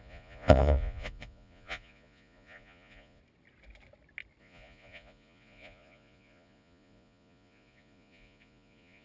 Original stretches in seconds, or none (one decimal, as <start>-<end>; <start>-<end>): 3.2-4.4